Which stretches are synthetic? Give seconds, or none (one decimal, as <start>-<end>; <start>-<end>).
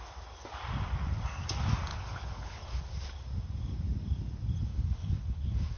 1.9-2.8; 4.7-5.8